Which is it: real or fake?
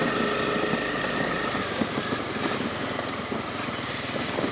real